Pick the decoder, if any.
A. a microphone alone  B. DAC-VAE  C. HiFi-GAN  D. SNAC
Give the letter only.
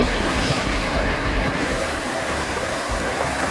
D